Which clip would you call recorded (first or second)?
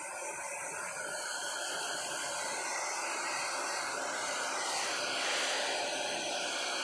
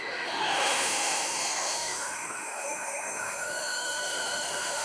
first